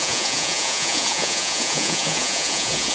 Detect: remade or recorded remade